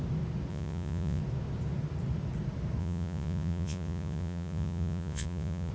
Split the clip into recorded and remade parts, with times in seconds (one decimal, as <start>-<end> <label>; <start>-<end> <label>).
0.0-0.5 recorded; 0.5-1.2 remade; 1.2-2.8 recorded; 2.8-5.7 remade